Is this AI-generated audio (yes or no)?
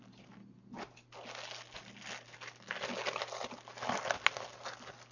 no